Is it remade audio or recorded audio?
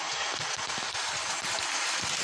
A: recorded